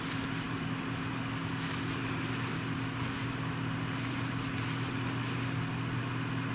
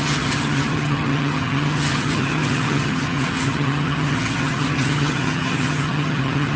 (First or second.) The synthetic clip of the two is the second